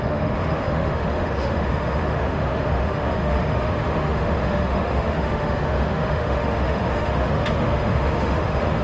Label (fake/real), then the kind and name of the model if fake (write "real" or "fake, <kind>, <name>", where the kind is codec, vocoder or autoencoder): fake, autoencoder, DAC-VAE